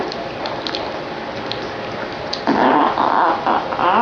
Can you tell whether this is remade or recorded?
recorded